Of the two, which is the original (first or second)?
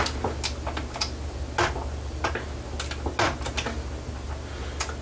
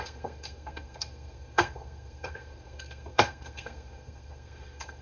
first